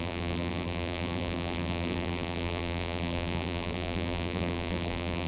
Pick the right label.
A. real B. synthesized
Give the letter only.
B